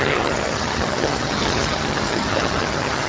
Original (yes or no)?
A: no